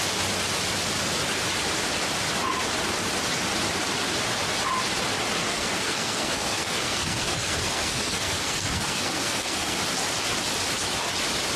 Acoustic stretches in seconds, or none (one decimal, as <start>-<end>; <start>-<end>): 0.0-5.4; 9.8-11.6